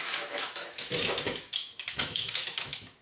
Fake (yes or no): yes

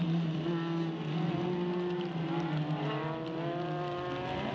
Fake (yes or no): no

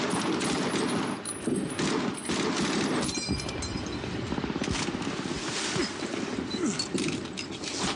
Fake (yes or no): no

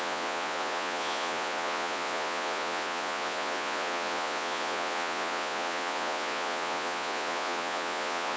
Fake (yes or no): yes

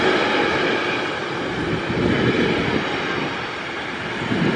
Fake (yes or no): no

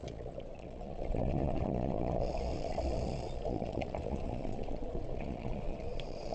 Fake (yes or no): yes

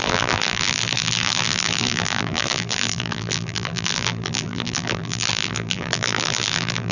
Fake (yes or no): yes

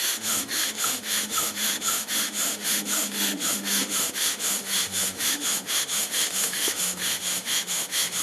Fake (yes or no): yes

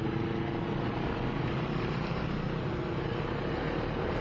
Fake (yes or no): no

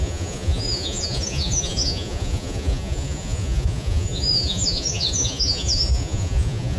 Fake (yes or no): yes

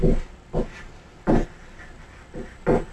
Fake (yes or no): no